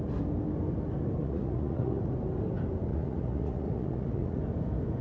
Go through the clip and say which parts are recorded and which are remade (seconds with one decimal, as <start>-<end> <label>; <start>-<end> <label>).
0.0-1.2 recorded; 1.2-2.1 remade; 2.1-2.9 recorded; 2.9-4.4 remade; 4.4-5.0 recorded